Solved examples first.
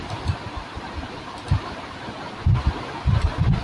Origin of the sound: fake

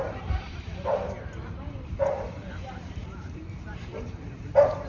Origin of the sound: fake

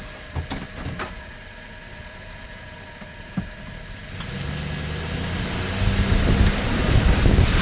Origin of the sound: real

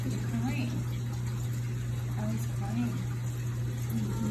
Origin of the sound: real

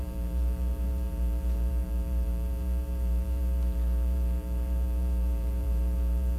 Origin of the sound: fake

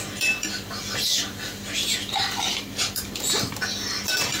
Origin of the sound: fake